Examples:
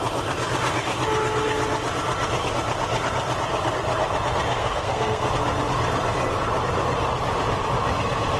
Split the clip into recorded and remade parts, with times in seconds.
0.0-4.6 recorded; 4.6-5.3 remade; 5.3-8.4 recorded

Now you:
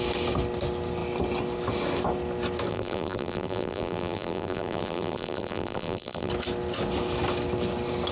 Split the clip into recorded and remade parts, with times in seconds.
0.0-2.7 recorded; 2.7-6.3 remade; 6.3-8.1 recorded

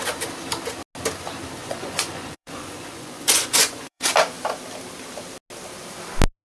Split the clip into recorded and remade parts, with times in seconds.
0.0-1.6 recorded; 1.6-4.1 remade; 4.1-6.5 recorded